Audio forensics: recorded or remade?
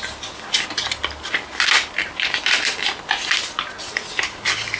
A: recorded